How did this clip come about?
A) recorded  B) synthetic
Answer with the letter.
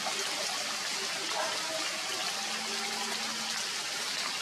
A